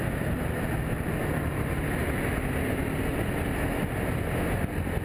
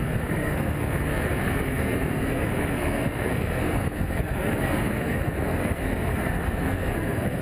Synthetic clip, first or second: second